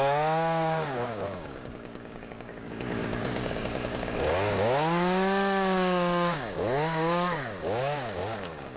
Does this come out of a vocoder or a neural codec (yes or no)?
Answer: yes